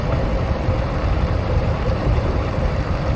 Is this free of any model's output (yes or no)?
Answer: no